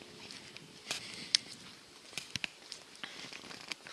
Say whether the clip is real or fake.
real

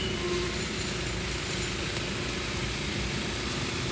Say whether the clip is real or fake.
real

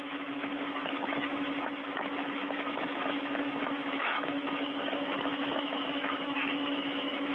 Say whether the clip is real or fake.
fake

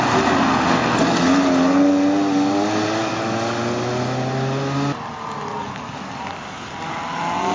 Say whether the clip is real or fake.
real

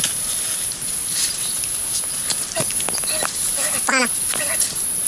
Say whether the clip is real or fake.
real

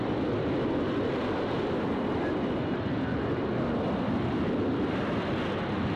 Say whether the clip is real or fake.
real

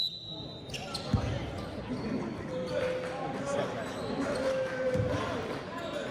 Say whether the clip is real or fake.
real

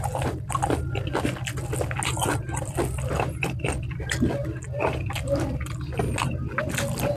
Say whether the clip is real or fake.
real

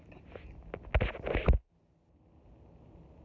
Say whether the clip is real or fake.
real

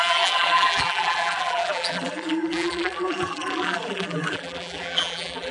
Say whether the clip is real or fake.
fake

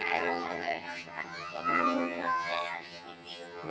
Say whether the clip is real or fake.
fake